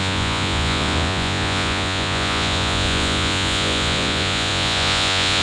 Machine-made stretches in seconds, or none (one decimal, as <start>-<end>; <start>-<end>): 0.0-5.4